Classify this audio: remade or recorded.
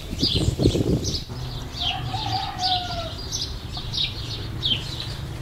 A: remade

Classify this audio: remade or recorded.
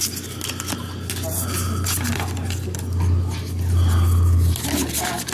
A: recorded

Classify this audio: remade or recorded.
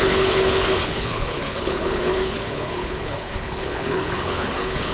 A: remade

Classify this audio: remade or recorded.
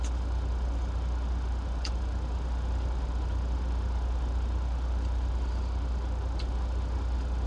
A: recorded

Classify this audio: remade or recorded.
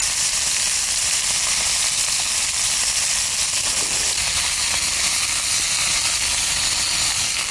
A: recorded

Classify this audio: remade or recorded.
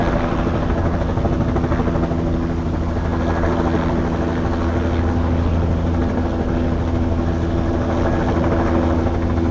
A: recorded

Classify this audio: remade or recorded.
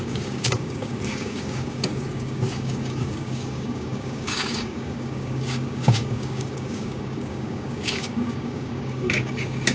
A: remade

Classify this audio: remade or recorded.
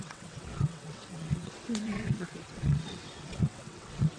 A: remade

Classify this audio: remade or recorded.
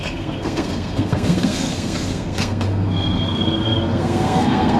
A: remade